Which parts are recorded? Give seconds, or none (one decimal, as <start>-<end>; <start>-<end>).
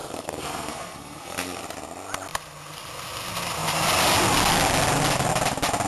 1.6-5.9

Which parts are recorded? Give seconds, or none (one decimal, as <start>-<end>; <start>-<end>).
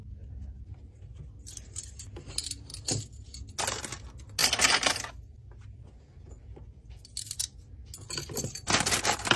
0.0-9.4